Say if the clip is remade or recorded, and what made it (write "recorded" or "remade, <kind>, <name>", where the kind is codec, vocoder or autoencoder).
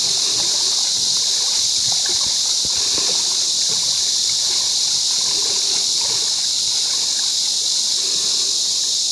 recorded